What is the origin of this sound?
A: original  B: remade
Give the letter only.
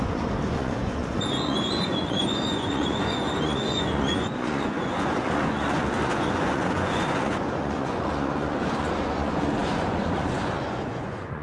B